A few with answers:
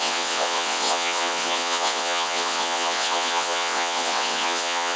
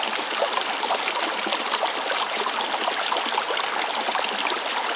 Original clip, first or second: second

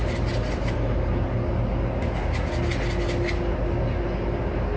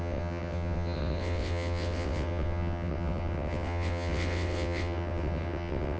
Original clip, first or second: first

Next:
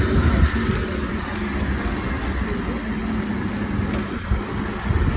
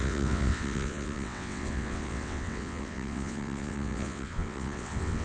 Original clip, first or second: first